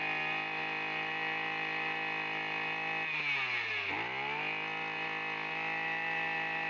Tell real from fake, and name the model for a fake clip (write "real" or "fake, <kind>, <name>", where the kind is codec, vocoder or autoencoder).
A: real